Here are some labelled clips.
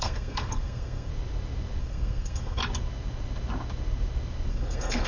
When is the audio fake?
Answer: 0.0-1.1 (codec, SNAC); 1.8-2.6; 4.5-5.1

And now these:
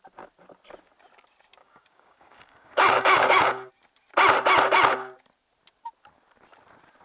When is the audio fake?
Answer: 1.6-3.7 (codec, DAC)

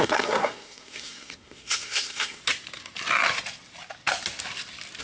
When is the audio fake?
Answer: 0.0-2.4 (codec, SNAC)